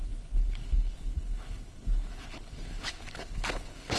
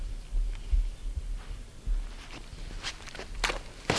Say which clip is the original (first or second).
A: second